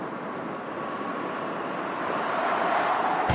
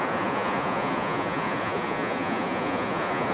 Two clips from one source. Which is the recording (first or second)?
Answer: first